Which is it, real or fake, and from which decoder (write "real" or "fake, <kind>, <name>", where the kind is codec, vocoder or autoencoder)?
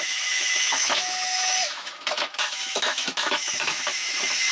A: fake, autoencoder, DAC-VAE